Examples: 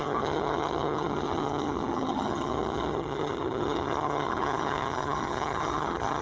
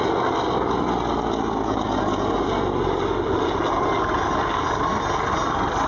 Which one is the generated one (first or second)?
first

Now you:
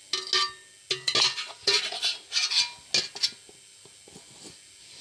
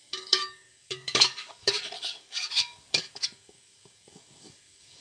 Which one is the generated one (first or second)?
second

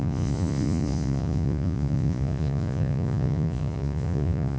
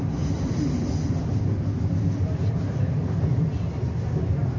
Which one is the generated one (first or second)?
first